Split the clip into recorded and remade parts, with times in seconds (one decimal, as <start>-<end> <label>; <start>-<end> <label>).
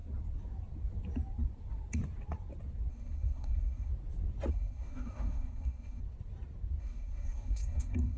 0.0-2.9 recorded; 2.9-3.9 remade; 3.9-4.5 recorded; 4.5-6.0 remade; 6.0-6.8 recorded; 6.8-8.2 remade